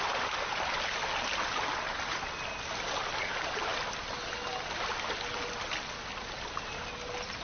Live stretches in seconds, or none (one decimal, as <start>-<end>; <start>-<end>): 0.0-7.4